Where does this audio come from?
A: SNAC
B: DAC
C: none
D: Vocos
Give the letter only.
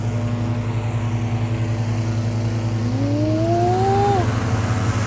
C